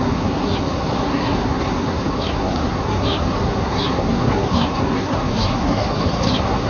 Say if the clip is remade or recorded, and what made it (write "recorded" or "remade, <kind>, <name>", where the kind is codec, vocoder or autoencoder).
remade, codec, SNAC